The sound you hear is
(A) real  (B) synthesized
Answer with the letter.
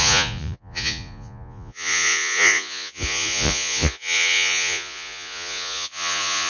B